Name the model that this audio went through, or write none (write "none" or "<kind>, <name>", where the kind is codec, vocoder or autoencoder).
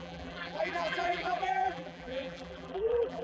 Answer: vocoder, BigVGAN v2